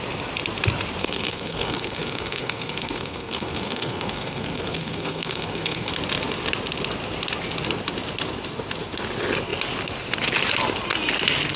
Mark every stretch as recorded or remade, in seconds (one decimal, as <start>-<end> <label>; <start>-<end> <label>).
0.0-1.0 recorded; 1.0-5.9 remade; 5.9-11.6 recorded